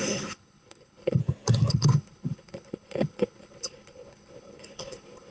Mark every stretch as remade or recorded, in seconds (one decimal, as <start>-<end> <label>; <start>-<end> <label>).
0.0-1.2 remade; 1.2-1.7 recorded; 1.7-5.3 remade